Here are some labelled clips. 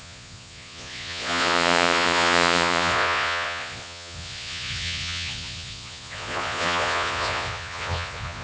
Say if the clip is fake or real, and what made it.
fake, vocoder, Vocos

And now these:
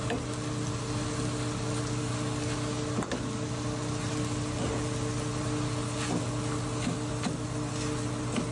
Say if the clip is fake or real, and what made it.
real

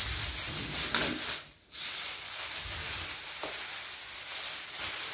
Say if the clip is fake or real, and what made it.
real